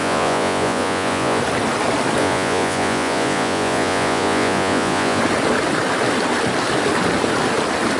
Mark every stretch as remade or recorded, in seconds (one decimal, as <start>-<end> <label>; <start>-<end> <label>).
0.0-1.4 remade; 1.4-2.2 recorded; 2.2-5.2 remade; 5.2-8.0 recorded